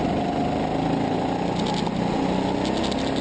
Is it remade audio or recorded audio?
recorded